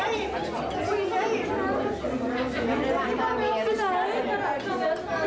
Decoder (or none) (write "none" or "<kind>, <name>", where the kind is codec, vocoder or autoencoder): none